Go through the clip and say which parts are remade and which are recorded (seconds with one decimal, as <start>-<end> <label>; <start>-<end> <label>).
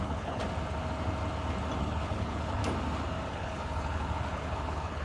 0.0-0.4 remade; 0.4-1.8 recorded; 1.8-2.6 remade; 2.6-3.3 recorded; 3.3-5.0 remade